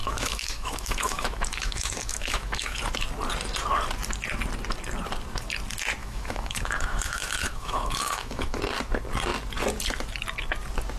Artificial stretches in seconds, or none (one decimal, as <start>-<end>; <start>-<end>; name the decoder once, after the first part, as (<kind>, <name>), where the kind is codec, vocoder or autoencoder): 0.0-2.8 (autoencoder, DAC-VAE); 6.0-8.6